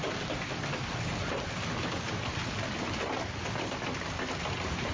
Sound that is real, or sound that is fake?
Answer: real